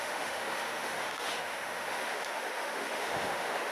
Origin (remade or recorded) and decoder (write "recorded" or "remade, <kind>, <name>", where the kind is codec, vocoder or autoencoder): remade, autoencoder, DAC-VAE